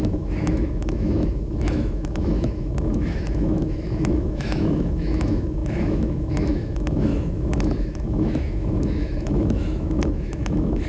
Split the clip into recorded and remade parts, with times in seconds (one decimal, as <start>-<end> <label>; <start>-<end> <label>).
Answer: 0.0-10.9 remade